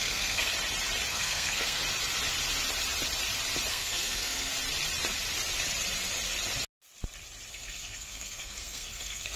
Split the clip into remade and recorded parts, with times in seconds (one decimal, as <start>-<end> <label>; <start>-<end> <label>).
0.0-0.5 remade; 0.5-1.1 recorded; 1.1-1.8 remade; 1.8-3.7 recorded; 3.7-4.5 remade; 4.5-7.5 recorded; 7.5-9.4 remade